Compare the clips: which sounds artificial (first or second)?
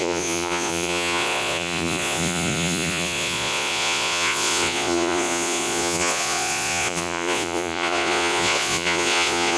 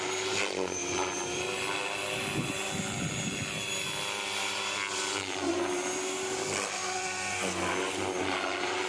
first